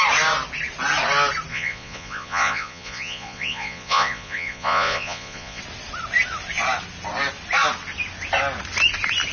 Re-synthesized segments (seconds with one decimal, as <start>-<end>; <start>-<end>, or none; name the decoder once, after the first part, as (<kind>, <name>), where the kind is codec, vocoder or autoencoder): 1.5-5.6 (vocoder, Vocos)